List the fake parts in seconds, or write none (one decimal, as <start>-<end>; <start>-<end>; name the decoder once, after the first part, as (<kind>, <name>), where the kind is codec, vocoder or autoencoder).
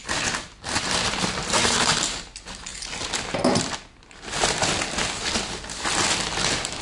none